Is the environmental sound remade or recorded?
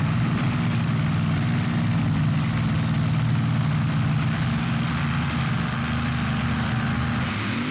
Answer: recorded